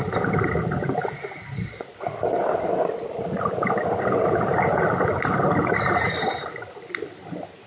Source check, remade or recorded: recorded